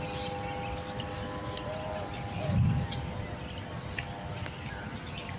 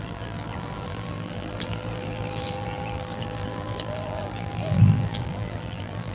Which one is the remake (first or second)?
second